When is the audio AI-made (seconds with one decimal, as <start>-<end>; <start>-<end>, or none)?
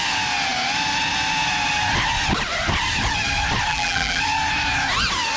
3.7-4.2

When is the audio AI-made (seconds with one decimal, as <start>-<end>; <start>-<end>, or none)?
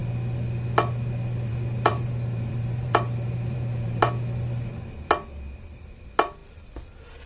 1.9-4.0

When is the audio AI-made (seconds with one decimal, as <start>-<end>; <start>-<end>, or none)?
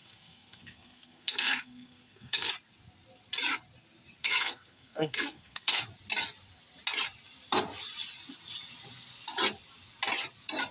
0.0-2.5; 4.2-5.8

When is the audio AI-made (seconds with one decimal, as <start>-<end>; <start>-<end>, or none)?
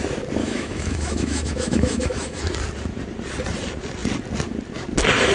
0.4-2.4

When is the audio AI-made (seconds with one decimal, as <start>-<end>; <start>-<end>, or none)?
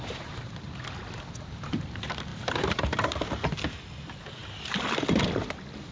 2.3-3.1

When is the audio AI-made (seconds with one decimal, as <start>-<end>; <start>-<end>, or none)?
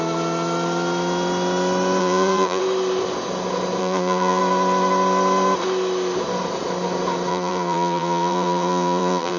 2.0-2.6; 3.8-4.4; 7.3-9.4